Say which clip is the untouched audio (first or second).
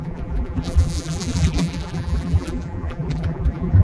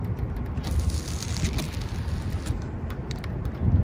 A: second